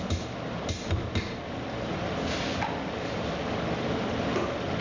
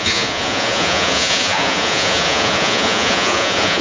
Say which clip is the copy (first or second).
second